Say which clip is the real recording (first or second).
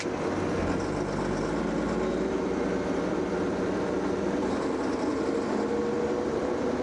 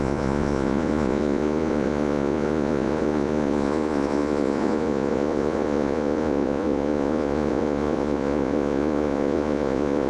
first